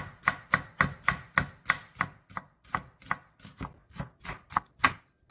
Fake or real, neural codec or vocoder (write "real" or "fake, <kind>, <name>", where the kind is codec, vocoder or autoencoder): real